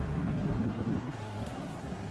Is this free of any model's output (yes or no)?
no